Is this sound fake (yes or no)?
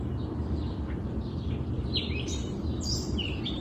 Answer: no